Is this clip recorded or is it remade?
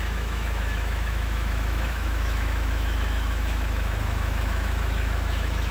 remade